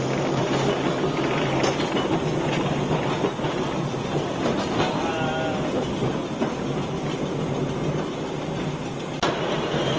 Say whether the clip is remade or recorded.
recorded